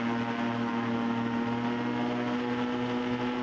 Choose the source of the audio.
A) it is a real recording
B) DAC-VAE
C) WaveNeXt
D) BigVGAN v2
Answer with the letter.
A